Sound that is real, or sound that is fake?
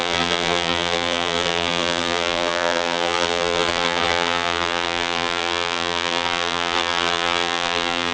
fake